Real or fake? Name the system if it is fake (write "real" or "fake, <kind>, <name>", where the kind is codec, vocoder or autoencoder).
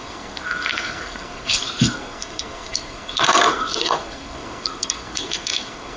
fake, codec, SNAC